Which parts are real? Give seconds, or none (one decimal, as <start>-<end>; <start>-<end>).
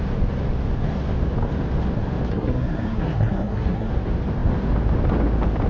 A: 0.0-2.3; 3.9-5.7